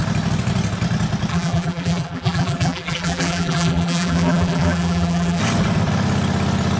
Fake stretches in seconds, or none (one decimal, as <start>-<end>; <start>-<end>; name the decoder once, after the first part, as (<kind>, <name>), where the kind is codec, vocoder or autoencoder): 1.3-5.4 (vocoder, BigVGAN v2)